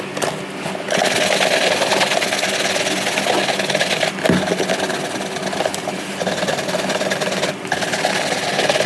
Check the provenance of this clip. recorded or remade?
recorded